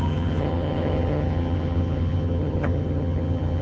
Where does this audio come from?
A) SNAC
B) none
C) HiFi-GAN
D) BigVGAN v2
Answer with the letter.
C